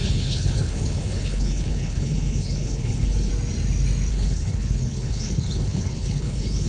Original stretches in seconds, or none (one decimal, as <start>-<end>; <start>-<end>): 3.3-4.1